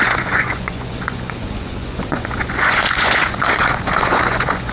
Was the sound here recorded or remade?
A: remade